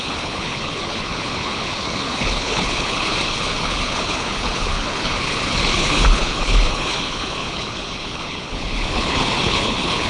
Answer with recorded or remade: remade